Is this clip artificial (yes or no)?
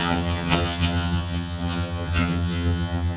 yes